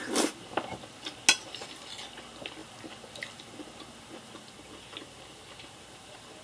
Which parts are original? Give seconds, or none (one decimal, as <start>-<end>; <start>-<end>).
0.0-6.4